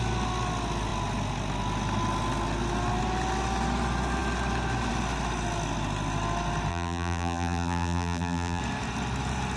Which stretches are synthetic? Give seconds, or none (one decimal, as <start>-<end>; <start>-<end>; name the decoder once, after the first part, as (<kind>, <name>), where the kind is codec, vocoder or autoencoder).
6.7-8.6 (vocoder, BigVGAN v2)